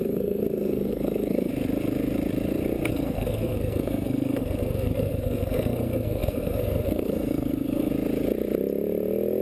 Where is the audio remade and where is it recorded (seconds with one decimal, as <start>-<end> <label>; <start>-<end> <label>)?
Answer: 0.0-1.5 remade; 1.5-2.9 recorded; 2.9-7.9 remade; 7.9-9.4 recorded